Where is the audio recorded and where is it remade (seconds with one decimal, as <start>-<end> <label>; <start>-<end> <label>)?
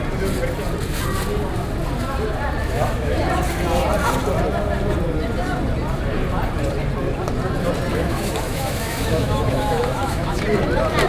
0.0-2.6 recorded; 2.6-3.2 remade; 3.2-7.9 recorded; 7.9-10.4 remade; 10.4-11.1 recorded